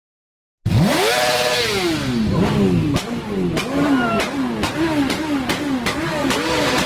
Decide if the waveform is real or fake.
real